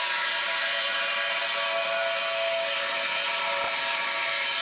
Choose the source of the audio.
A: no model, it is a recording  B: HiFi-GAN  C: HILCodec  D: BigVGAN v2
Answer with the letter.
A